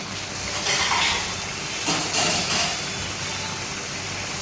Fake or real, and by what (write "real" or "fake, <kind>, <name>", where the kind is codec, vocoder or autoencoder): real